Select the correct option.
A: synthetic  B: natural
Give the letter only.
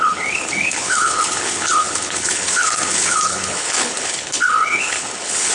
A